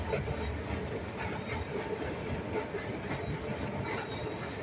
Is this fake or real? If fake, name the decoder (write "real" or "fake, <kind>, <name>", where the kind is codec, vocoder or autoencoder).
real